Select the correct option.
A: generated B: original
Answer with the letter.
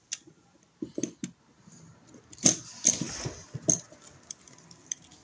B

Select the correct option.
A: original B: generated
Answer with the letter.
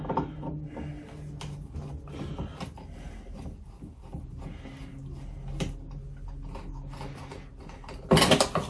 A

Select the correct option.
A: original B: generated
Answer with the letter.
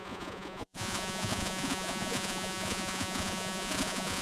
B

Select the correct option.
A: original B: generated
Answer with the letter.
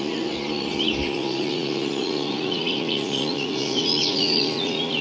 B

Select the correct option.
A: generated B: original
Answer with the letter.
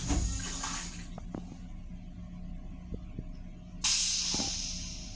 B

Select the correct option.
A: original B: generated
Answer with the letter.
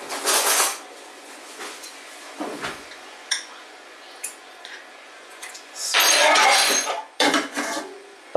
B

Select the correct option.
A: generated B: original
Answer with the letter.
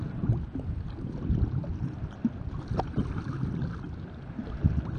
B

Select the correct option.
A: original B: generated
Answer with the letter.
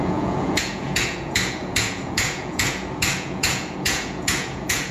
B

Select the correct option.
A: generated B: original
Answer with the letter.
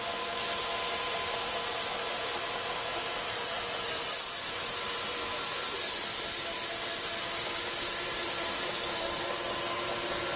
B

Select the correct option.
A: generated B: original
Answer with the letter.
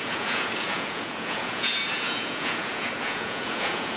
A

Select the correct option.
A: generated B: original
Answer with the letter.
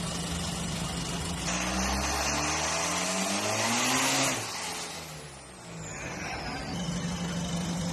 B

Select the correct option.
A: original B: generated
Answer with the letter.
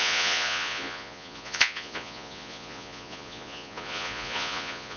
B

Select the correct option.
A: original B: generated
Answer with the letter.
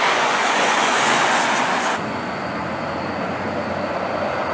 B